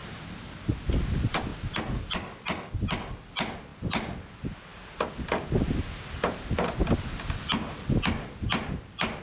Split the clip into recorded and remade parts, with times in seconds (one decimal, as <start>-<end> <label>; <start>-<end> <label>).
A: 0.0-9.2 recorded